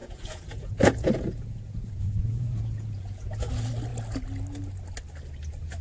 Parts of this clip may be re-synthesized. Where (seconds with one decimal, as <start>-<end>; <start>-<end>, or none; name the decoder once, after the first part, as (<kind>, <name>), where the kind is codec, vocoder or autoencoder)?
0.0-3.5 (vocoder, Vocos)